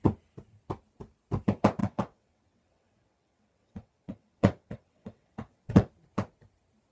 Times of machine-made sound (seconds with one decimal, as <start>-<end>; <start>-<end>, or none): 1.8-5.9